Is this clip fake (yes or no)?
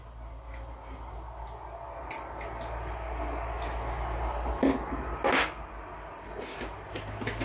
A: no